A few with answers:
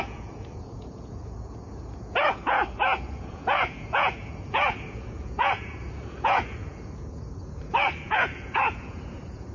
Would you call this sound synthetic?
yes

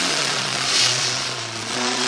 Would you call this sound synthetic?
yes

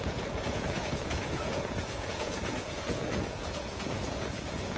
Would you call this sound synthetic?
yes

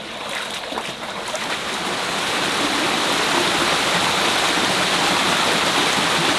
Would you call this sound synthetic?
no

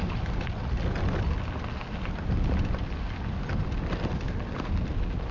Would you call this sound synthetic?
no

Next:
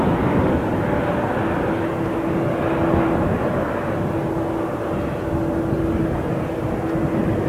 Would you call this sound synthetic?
no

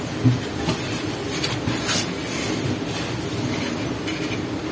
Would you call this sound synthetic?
no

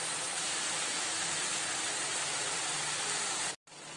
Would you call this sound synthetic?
no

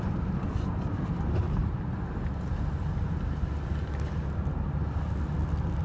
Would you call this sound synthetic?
no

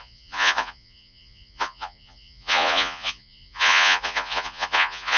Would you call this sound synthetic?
yes